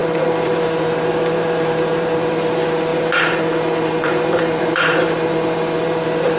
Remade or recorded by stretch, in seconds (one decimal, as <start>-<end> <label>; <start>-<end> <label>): 0.0-6.4 remade